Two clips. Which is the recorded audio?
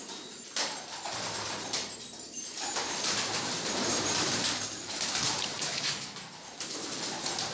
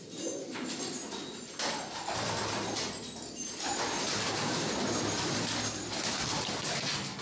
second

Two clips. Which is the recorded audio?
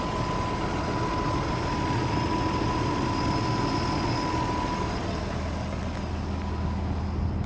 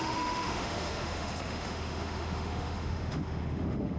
first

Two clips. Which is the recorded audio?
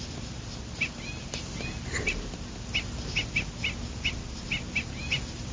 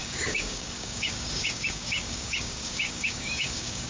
first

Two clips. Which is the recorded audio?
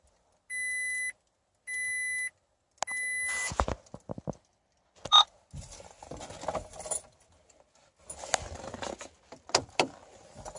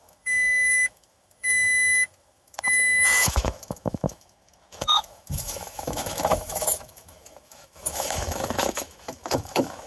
first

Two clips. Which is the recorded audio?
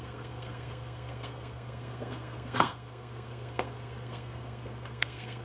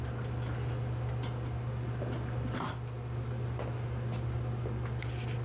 second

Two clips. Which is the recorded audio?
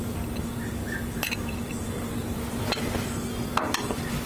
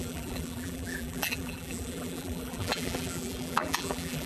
first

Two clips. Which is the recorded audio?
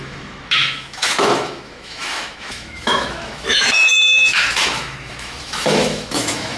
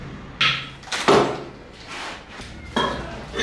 second